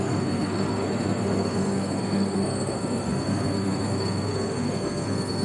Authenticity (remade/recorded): remade